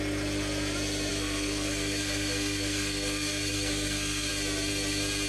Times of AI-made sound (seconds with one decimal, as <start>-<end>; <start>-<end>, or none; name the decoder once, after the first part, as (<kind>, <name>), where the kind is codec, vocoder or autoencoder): 1.1-4.3 (codec, SNAC)